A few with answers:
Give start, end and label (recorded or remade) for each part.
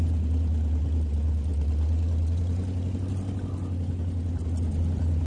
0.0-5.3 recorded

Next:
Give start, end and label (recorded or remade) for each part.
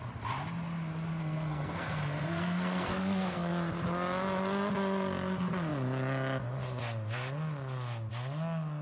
0.0-1.2 recorded; 1.2-3.5 remade; 3.5-8.8 recorded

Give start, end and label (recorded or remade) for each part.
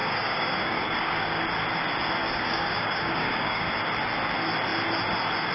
0.0-1.4 remade; 1.4-2.2 recorded; 2.2-3.7 remade; 3.7-5.5 recorded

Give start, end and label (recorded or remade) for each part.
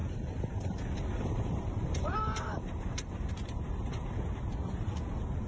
0.0-3.3 remade; 3.3-5.5 recorded